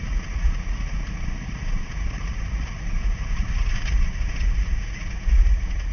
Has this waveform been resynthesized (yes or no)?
yes